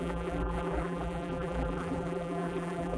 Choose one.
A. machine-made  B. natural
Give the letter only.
A